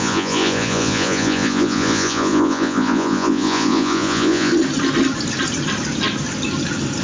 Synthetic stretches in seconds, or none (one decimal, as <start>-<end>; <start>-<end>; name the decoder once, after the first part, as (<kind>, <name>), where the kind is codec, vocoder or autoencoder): 0.0-4.5 (vocoder, Vocos)